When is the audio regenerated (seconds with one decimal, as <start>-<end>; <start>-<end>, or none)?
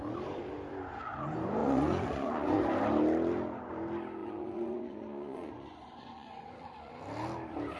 1.6-2.6; 4.2-6.9